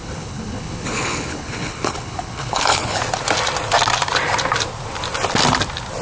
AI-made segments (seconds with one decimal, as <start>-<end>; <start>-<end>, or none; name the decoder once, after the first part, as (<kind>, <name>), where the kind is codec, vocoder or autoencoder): 0.0-3.0 (codec, HILCodec)